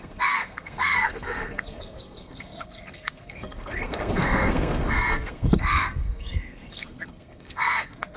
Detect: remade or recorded remade